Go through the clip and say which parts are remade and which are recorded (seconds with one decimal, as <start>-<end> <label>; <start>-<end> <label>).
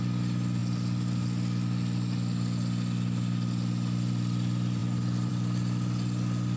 0.0-6.6 recorded